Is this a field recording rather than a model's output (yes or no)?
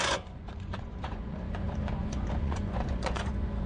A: no